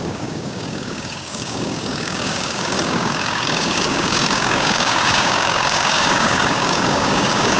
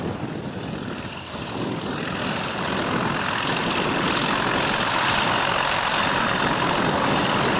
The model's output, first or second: first